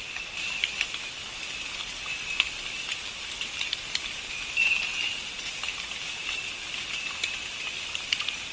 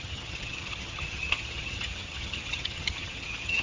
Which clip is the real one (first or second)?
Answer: first